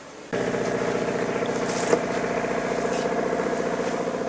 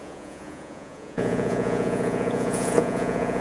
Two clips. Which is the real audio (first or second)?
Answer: first